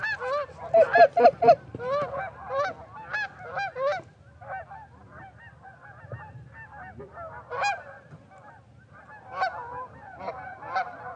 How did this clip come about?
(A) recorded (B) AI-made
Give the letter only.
A